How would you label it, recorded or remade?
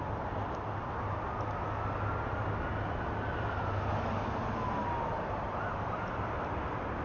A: recorded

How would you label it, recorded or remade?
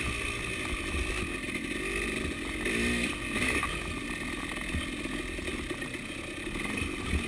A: recorded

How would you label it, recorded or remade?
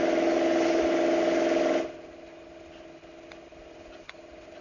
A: recorded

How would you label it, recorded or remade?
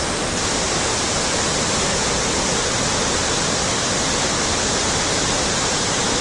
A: recorded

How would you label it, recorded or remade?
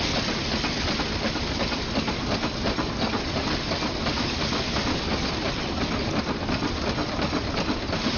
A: recorded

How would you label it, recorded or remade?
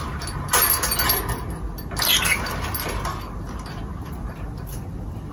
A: recorded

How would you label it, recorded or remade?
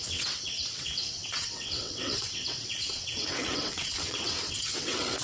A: remade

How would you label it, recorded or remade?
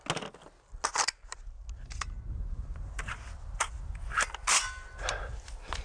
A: recorded